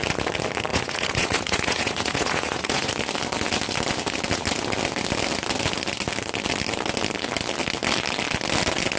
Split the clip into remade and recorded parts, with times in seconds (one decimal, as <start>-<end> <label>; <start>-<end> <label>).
0.0-0.7 recorded; 0.7-2.9 remade; 2.9-9.0 recorded